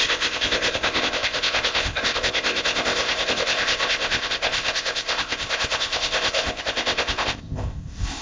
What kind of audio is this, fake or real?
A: fake